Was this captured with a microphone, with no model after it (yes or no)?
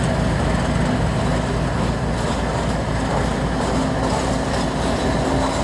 yes